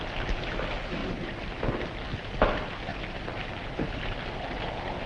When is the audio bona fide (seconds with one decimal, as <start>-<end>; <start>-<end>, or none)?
0.0-2.9; 4.4-5.1